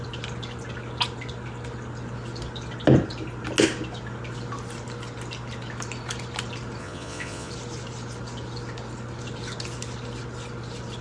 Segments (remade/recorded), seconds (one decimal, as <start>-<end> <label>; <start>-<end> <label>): 0.0-6.8 recorded; 6.8-7.5 remade; 7.5-11.0 recorded